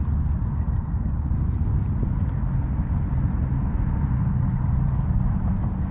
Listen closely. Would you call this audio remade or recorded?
recorded